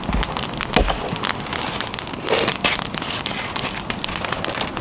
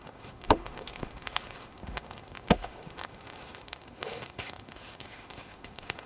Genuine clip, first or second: first